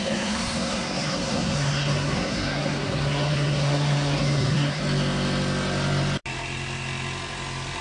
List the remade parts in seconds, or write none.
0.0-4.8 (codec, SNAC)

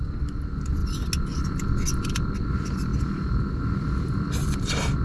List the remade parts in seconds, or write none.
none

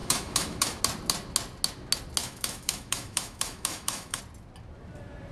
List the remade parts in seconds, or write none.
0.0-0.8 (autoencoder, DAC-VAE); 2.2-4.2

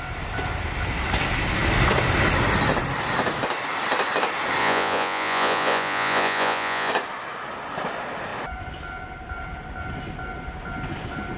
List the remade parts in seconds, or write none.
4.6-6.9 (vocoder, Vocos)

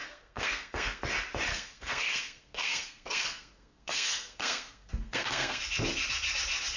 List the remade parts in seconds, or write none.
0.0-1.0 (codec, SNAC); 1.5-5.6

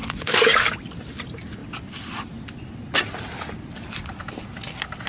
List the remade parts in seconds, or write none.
0.0-0.7 (codec, DAC)